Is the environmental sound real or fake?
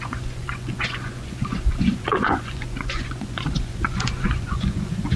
fake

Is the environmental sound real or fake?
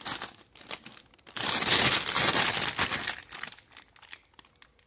real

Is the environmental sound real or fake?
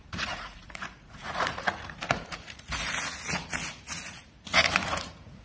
fake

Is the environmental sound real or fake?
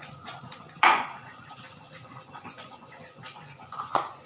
fake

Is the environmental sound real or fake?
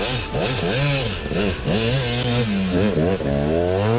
real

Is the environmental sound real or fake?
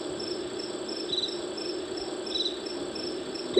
real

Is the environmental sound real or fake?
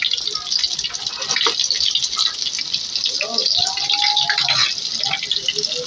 real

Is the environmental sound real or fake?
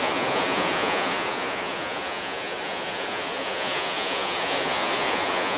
fake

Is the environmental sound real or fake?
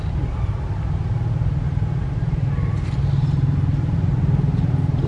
real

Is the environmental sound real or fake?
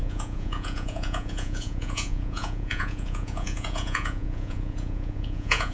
fake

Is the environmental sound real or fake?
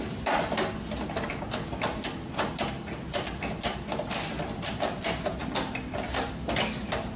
real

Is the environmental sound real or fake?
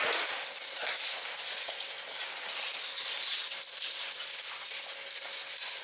real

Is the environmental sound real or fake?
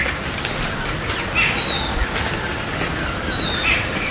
real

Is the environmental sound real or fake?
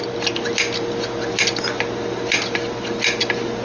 real